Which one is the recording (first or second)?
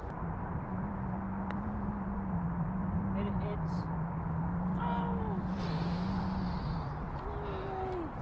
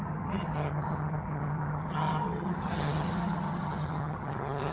first